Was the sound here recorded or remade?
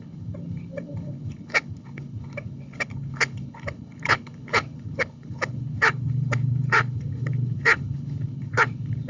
remade